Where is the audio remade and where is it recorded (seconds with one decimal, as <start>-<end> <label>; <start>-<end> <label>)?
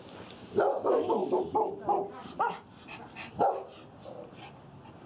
0.0-0.7 recorded; 0.7-1.4 remade; 1.4-5.1 recorded